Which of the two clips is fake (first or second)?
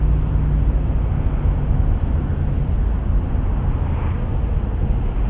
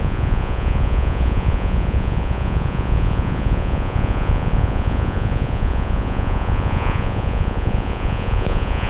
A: second